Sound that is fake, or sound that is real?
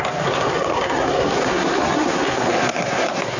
fake